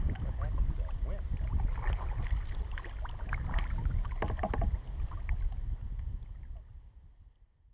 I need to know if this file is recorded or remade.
recorded